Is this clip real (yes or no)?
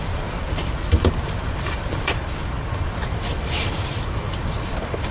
no